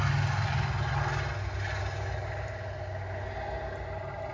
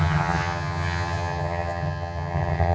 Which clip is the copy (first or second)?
second